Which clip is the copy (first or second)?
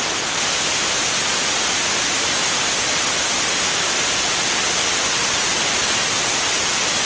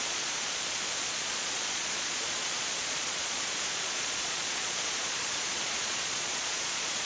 second